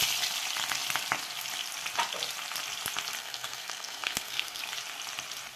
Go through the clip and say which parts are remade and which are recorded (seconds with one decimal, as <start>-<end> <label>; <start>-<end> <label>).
0.0-3.2 recorded; 3.2-4.6 remade; 4.6-5.6 recorded